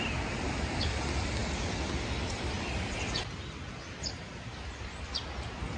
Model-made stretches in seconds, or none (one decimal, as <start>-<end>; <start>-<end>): none